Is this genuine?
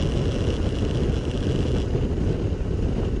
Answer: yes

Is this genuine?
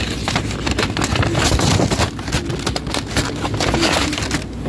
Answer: yes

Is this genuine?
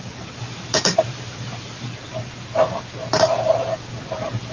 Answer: yes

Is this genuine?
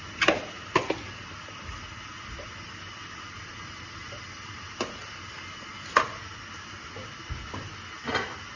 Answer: yes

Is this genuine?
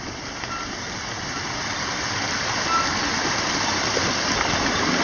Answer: yes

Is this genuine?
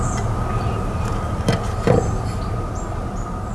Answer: yes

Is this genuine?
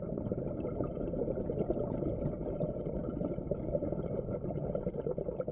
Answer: yes